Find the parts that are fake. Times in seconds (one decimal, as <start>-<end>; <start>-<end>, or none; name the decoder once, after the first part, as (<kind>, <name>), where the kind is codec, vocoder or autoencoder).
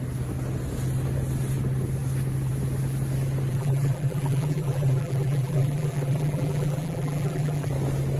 3.5-7.7 (vocoder, BigVGAN v2)